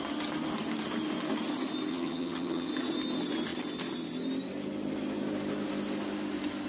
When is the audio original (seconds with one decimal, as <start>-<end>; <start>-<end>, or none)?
0.0-1.9; 2.7-6.7